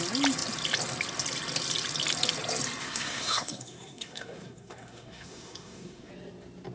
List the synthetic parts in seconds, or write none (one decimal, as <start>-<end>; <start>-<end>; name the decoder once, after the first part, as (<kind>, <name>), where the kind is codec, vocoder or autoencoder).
2.8-6.1 (codec, SNAC)